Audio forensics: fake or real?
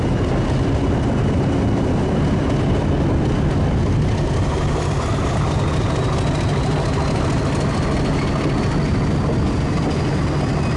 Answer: real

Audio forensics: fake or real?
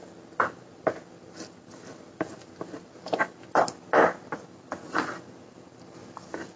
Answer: real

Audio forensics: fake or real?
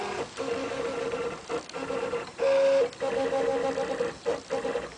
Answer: real